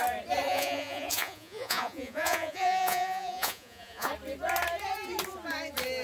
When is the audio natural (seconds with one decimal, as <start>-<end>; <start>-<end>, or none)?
0.0-0.5; 4.1-6.0